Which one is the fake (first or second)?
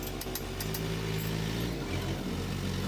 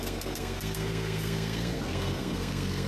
second